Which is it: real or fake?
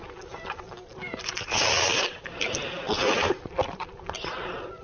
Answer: real